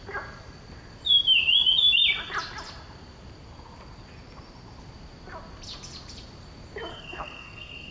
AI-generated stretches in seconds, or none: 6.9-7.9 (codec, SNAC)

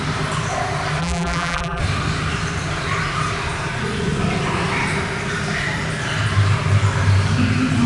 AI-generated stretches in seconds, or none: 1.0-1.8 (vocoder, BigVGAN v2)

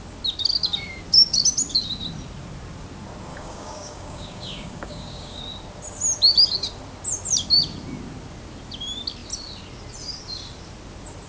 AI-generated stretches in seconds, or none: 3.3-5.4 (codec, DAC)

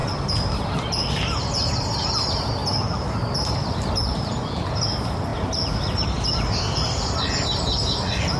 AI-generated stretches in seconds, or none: none